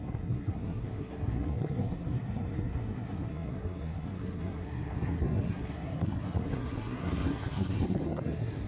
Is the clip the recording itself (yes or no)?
no